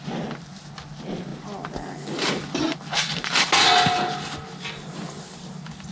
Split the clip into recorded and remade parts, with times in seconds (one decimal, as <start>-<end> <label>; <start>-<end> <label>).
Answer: 0.0-5.9 recorded